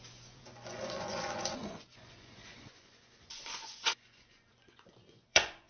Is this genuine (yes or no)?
no